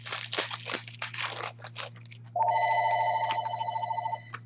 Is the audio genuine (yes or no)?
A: yes